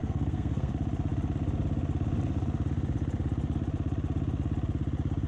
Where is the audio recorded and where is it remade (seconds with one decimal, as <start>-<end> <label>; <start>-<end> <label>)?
0.0-0.7 remade; 0.7-5.3 recorded